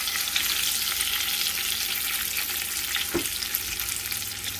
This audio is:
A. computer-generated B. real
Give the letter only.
B